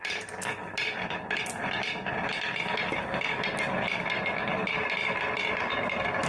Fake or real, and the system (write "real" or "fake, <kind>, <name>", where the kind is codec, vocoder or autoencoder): real